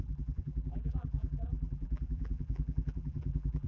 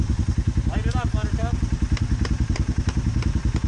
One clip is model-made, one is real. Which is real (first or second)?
second